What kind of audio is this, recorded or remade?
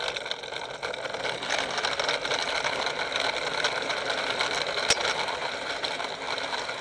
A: recorded